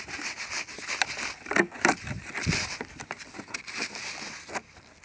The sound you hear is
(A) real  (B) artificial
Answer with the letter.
A